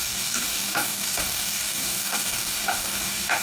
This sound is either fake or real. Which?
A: fake